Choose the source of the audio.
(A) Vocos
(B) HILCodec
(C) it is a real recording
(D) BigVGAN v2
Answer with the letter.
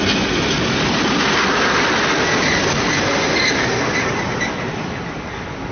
C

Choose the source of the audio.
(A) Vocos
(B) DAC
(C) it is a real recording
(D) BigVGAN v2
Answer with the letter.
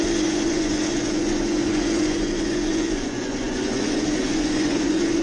A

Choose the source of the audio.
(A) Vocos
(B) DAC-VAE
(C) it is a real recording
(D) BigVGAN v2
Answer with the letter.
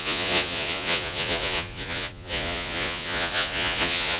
A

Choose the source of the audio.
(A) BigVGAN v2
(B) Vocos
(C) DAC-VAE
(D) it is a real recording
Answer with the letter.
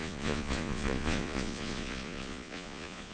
B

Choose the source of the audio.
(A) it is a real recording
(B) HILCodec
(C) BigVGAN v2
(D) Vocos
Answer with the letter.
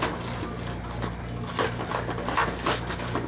A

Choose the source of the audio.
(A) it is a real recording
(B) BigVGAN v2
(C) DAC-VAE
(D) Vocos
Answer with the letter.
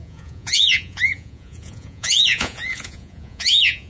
D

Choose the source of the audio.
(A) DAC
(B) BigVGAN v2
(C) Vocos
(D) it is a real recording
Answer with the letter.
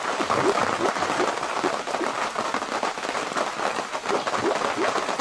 D